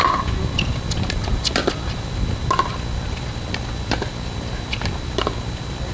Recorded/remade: recorded